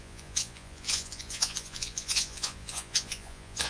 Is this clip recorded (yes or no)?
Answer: no